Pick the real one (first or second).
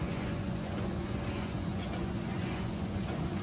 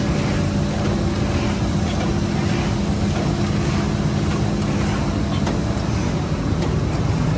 second